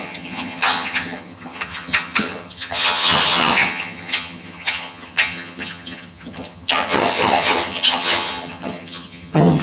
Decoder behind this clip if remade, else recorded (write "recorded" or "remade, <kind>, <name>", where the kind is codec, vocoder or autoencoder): remade, vocoder, HiFi-GAN